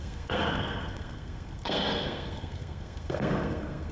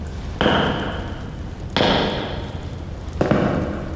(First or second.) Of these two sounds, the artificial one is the first